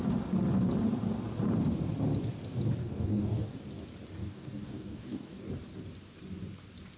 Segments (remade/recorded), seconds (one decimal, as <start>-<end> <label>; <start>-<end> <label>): 0.0-2.8 recorded; 2.8-3.6 remade; 3.6-4.2 recorded; 4.2-5.5 remade; 5.5-7.0 recorded